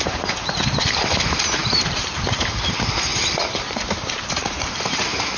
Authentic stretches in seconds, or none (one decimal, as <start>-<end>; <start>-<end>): 3.1-4.5